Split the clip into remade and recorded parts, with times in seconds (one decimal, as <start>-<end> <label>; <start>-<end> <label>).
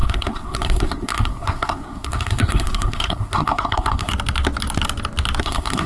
0.0-4.1 remade; 4.1-5.4 recorded; 5.4-5.9 remade